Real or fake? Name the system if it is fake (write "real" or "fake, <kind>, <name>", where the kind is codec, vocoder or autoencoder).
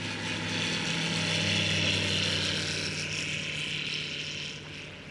real